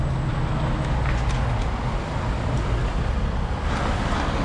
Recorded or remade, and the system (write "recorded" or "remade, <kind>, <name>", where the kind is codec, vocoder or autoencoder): recorded